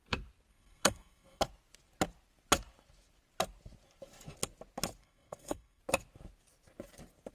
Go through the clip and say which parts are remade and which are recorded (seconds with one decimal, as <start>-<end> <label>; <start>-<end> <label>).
0.0-0.5 recorded; 0.5-1.4 remade; 1.4-5.0 recorded; 5.0-5.8 remade; 5.8-7.3 recorded